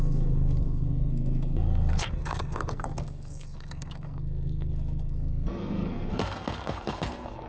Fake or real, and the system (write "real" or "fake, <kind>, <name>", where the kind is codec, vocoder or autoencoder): fake, codec, SNAC